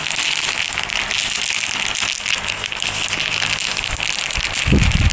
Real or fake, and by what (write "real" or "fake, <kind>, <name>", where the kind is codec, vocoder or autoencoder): real